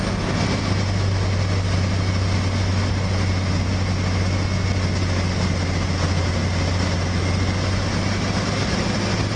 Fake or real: real